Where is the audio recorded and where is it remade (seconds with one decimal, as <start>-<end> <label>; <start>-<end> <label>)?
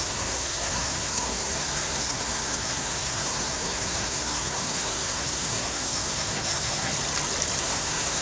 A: 0.0-6.9 remade; 6.9-7.6 recorded; 7.6-8.2 remade